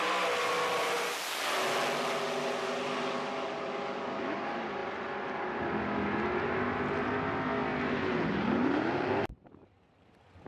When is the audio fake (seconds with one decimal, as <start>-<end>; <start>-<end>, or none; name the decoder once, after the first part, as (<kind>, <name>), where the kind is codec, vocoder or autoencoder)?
none

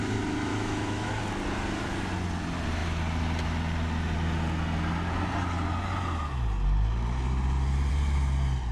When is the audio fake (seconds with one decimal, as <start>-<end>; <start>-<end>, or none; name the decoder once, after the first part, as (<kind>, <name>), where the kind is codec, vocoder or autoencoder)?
0.5-1.1 (autoencoder, DAC-VAE)

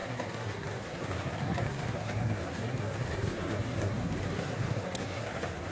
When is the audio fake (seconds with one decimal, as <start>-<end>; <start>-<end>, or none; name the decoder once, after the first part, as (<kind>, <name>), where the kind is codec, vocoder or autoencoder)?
0.0-5.7 (codec, SNAC)

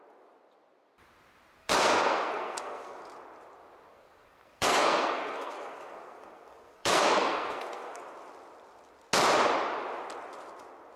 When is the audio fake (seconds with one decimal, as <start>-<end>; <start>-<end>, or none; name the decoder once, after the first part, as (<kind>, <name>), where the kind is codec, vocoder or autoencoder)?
1.6-3.0 (codec, SNAC); 3.9-8.0

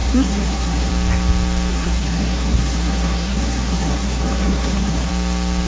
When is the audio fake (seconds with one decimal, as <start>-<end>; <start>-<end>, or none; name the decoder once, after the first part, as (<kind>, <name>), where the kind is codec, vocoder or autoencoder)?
0.0-0.9 (codec, SNAC); 1.7-5.1